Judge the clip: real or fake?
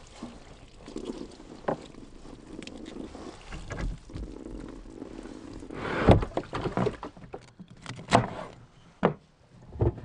real